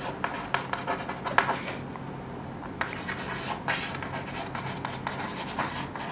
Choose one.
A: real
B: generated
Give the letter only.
A